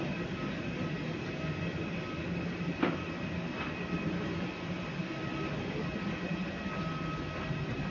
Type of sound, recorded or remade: recorded